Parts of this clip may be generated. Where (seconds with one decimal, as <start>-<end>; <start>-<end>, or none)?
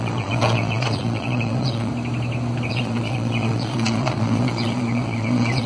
0.0-1.9; 2.7-5.7